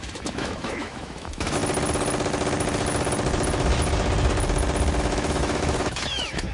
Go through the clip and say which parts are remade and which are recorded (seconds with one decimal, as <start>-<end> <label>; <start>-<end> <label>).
0.0-1.6 remade; 1.6-5.0 recorded; 5.0-6.5 remade